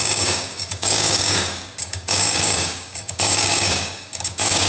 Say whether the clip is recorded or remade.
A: remade